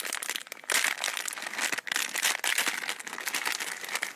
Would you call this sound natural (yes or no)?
yes